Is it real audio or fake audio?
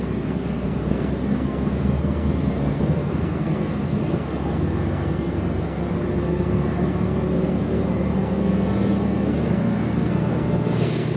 fake